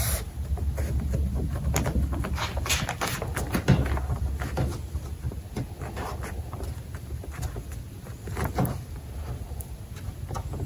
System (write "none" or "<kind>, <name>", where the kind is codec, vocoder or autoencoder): none